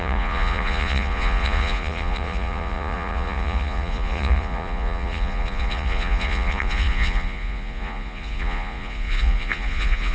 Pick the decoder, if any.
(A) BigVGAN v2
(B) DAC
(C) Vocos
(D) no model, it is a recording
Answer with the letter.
C